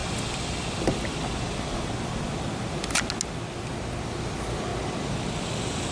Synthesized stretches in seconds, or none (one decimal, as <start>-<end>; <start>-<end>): none